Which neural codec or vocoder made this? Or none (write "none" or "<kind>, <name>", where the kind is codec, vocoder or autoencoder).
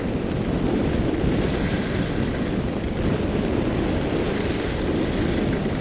none